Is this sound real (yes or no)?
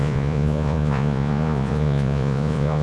no